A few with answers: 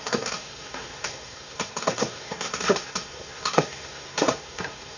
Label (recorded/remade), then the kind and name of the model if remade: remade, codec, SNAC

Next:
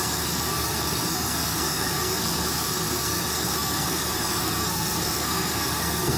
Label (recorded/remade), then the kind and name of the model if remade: remade, codec, SNAC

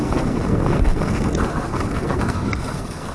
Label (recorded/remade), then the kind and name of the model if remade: remade, codec, SNAC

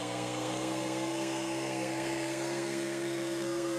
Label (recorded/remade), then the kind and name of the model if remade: remade, codec, SNAC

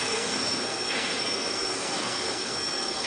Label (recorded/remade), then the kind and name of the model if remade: remade, codec, SNAC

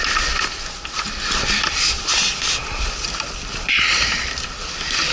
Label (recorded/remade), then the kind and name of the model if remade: recorded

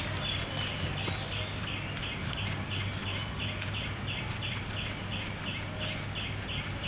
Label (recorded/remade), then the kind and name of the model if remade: recorded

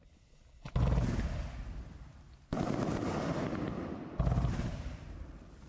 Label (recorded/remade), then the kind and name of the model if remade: recorded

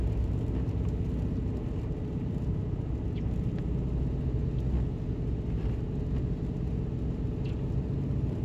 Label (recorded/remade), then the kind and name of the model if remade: recorded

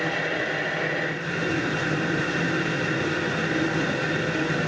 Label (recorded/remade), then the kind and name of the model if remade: recorded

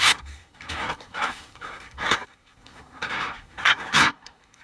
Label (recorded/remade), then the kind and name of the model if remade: remade, codec, SNAC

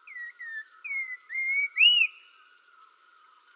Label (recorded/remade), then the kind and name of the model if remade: recorded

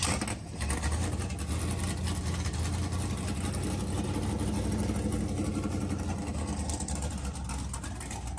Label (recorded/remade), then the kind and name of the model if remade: recorded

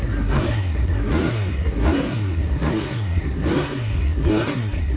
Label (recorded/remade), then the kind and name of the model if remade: remade, codec, SNAC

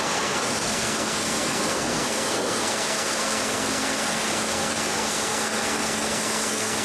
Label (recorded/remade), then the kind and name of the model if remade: remade, codec, SNAC